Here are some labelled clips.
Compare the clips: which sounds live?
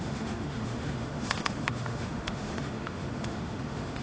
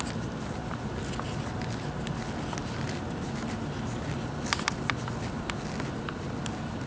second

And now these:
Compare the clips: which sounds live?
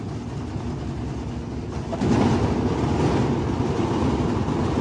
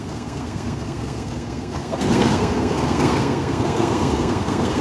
first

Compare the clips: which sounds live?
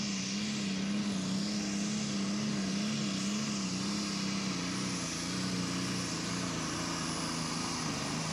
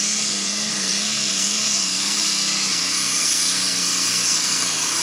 first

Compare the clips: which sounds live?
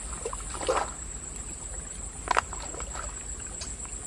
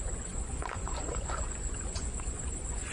first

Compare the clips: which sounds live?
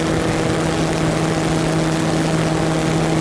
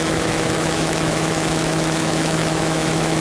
first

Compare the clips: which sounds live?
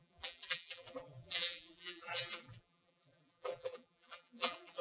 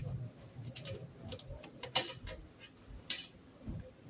second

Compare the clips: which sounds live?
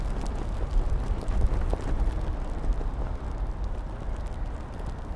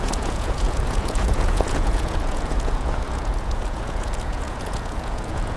first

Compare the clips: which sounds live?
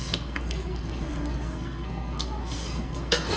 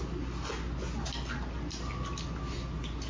second